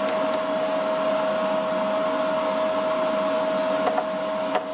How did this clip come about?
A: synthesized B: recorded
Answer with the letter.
B